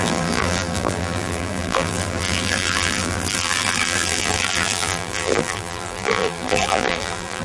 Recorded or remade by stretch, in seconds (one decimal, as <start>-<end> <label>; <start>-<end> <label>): 0.0-7.4 remade